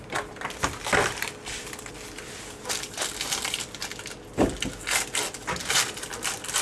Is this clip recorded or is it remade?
recorded